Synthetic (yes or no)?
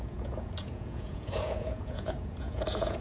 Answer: yes